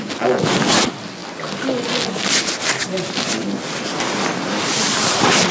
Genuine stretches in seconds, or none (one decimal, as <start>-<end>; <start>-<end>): 0.0-5.5